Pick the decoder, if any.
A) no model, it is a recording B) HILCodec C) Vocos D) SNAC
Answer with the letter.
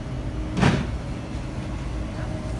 A